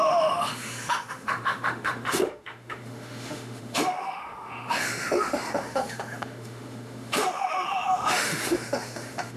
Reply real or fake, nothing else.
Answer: fake